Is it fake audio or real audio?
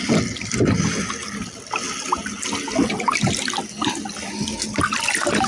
real